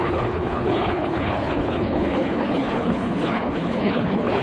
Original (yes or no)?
no